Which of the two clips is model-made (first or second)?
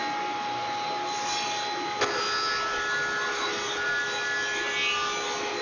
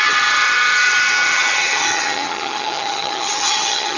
second